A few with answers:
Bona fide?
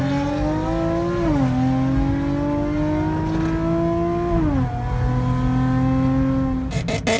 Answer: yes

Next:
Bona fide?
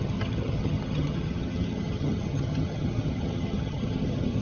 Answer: no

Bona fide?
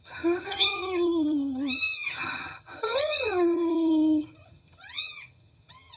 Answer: no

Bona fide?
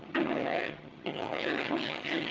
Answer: no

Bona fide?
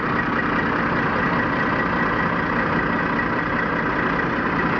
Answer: yes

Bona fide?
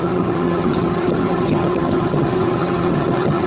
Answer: no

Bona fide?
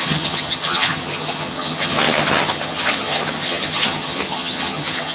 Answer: no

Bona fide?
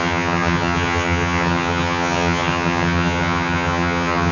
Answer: no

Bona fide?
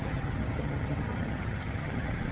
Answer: no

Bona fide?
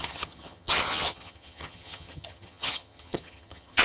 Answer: no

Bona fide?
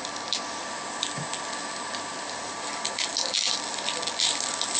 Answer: yes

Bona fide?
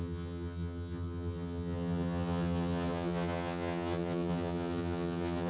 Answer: no